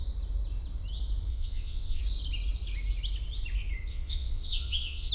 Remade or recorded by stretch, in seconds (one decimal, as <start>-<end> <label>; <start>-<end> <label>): 0.0-1.3 recorded; 1.3-2.0 remade; 2.0-3.9 recorded; 3.9-5.1 remade